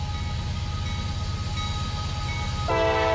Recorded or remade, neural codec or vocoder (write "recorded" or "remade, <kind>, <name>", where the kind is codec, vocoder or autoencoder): recorded